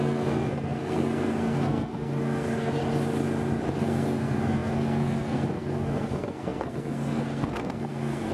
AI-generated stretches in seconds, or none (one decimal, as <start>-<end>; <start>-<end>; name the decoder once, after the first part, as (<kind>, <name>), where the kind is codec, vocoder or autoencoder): 0.0-2.8 (codec, SNAC); 3.8-8.3